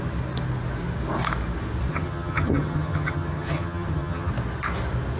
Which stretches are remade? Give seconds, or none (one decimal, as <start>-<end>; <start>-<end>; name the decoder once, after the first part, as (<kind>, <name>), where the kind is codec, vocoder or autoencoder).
1.9-4.3 (vocoder, HiFi-GAN)